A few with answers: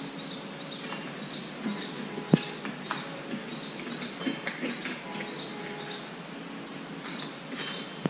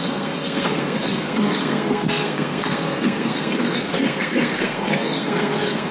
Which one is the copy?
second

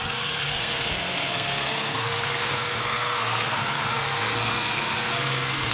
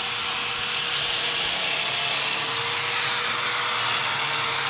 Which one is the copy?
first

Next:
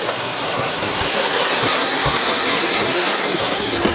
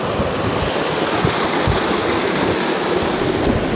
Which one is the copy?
first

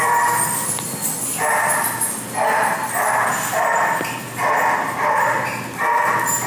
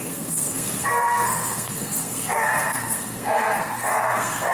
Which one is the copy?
second